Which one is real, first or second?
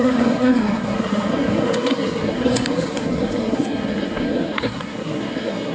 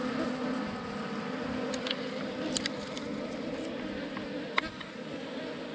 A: second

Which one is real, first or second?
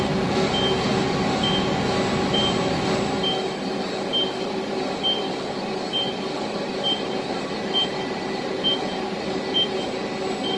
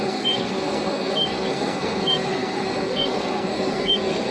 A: first